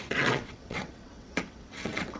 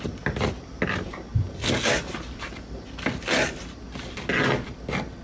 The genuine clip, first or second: second